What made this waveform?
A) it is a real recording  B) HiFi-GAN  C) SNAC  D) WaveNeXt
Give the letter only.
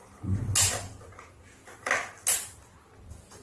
A